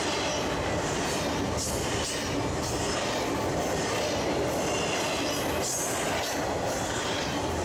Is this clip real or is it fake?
real